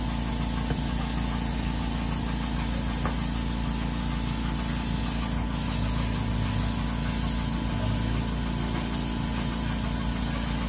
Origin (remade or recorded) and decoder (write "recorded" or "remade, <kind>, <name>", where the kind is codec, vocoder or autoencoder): recorded